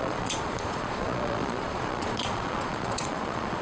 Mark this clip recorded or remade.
remade